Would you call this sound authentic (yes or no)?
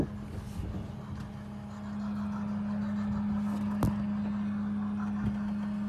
yes